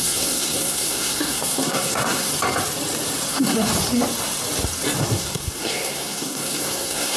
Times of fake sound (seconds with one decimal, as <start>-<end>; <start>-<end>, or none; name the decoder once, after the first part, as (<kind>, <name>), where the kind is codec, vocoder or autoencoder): 0.0-2.3 (codec, SNAC); 3.3-3.7; 5.0-7.2